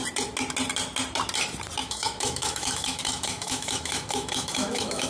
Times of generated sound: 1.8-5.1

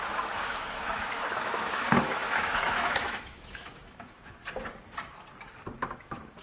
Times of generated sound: 0.0-4.4; 6.0-6.4

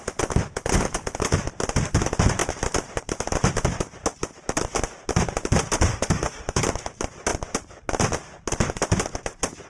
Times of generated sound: 5.9-6.6

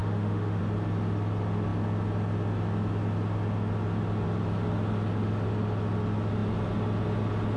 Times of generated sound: 0.0-0.6

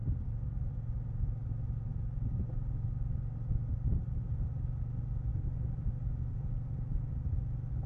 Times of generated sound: none

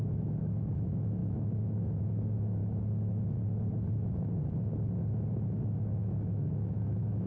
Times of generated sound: 0.0-2.6; 5.5-7.3